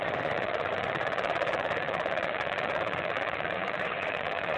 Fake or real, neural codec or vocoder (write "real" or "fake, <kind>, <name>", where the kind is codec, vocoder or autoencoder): fake, vocoder, Vocos